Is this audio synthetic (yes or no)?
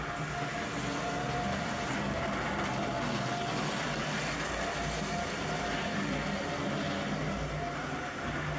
no